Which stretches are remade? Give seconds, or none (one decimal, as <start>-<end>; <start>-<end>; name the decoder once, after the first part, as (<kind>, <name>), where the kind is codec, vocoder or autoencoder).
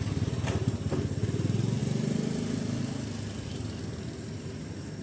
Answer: none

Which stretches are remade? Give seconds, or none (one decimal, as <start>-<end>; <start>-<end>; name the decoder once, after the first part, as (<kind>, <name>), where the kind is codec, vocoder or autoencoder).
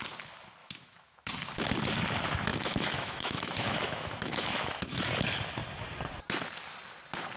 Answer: 0.6-1.3 (autoencoder, DAC-VAE); 2.5-5.0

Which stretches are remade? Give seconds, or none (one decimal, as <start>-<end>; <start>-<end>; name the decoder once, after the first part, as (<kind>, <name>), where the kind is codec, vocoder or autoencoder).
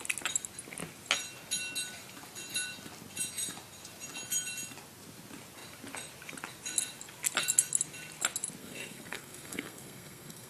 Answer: 8.6-10.5 (codec, SNAC)